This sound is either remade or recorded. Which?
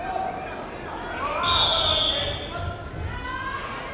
recorded